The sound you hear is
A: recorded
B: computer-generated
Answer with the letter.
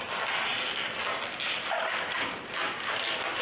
A